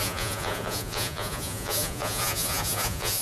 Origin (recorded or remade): remade